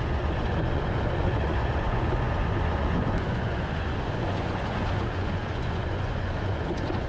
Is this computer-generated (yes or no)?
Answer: yes